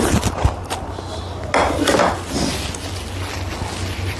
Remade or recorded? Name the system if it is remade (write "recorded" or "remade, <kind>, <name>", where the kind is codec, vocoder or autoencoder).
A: recorded